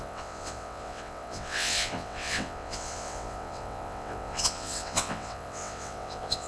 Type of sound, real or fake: fake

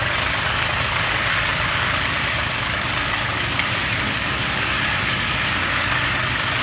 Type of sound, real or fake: fake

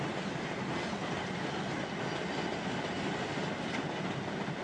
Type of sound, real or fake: real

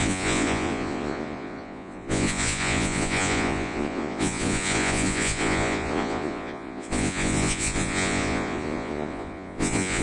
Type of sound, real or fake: fake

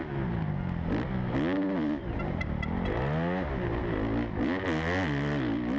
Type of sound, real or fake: real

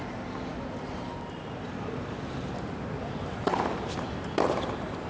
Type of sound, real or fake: fake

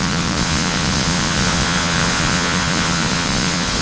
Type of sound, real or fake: fake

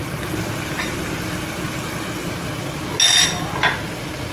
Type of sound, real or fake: real